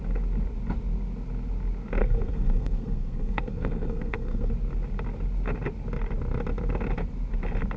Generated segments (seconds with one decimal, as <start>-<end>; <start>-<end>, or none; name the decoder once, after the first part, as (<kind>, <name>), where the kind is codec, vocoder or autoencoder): 2.0-4.5 (codec, SNAC)